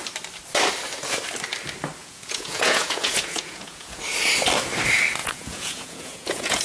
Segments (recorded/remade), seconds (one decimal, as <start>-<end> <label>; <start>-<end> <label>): 0.0-2.0 recorded; 2.0-4.0 remade; 4.0-5.2 recorded; 5.2-6.6 remade